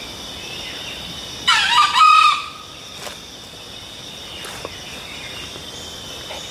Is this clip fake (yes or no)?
no